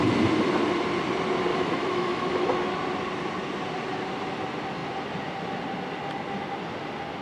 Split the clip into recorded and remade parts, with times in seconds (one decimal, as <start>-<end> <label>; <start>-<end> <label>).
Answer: 0.0-1.5 recorded; 1.5-2.7 remade; 2.7-7.2 recorded